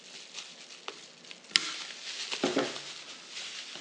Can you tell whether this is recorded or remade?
recorded